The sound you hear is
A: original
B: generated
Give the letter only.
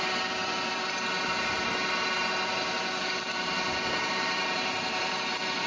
B